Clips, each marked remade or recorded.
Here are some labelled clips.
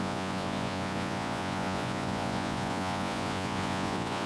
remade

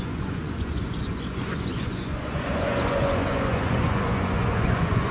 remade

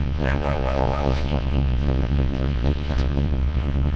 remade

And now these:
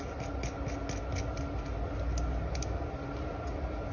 recorded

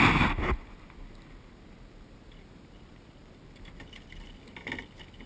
recorded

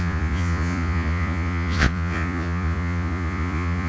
remade